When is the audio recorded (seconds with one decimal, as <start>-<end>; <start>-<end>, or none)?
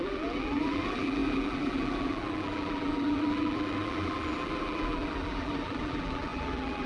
none